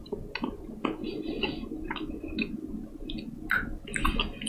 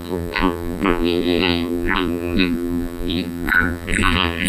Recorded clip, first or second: first